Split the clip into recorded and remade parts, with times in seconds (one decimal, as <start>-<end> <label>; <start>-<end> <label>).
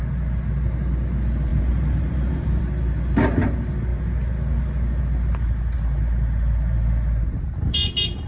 0.0-1.5 recorded; 1.5-2.6 remade; 2.6-8.3 recorded